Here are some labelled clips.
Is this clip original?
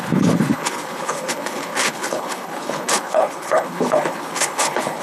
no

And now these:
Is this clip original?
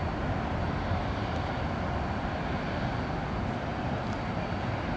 yes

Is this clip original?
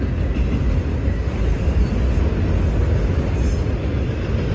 yes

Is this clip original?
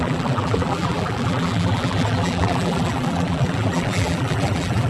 no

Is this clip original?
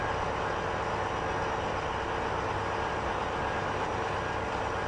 yes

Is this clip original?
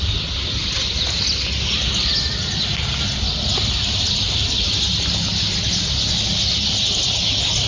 yes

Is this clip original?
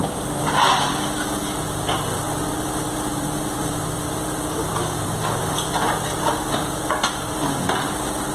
yes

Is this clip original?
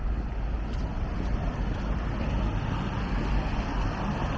yes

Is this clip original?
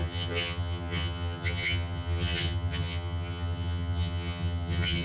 no